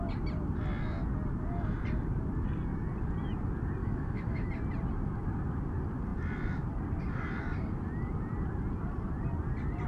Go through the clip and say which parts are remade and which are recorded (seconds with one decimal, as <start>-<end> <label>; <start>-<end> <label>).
0.0-3.8 recorded; 3.8-4.5 remade; 4.5-9.9 recorded